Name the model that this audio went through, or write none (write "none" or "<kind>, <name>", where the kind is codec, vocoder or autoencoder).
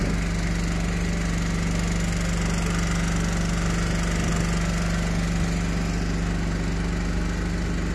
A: none